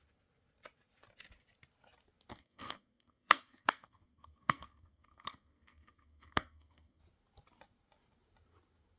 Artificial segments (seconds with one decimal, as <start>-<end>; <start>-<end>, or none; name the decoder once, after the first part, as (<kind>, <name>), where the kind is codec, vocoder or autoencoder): 2.3-7.0 (codec, SNAC)